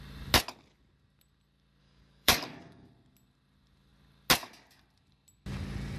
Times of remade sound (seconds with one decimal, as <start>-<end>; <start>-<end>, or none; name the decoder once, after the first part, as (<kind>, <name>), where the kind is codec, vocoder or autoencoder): 1.8-2.9 (codec, DAC)